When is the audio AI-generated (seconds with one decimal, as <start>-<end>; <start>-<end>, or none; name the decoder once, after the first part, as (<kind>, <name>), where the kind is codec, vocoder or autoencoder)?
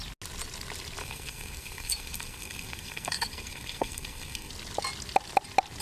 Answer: 1.0-4.5 (codec, SNAC)